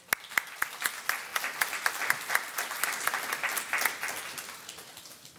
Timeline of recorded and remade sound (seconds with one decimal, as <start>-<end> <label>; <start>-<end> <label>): 0.0-5.4 recorded